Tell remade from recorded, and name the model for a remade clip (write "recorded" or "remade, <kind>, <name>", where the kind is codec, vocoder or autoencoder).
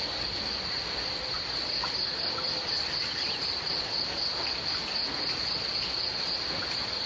recorded